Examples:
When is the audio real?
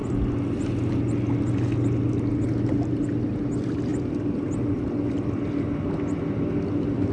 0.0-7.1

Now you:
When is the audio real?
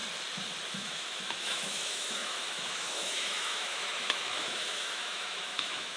0.0-0.7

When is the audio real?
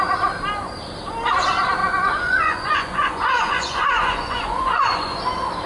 0.0-1.8; 5.2-5.7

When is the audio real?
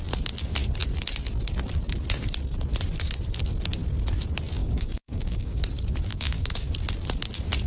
0.0-4.6; 5.6-6.1; 6.7-7.7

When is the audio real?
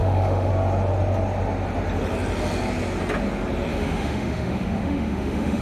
0.5-3.7